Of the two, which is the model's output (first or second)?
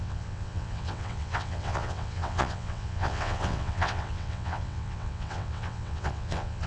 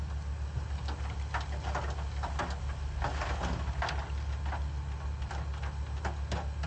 first